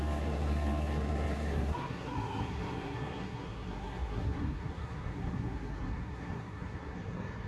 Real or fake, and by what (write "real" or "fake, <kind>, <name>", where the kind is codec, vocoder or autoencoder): fake, codec, SNAC